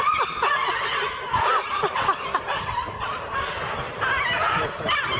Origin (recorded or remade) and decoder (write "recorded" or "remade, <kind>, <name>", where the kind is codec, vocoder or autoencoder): recorded